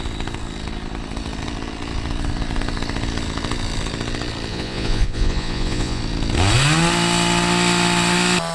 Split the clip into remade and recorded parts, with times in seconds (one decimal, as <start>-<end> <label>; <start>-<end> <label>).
0.0-4.5 recorded; 4.5-6.0 remade; 6.0-8.5 recorded